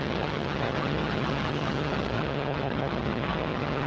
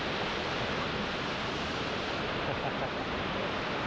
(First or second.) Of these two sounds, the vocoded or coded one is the first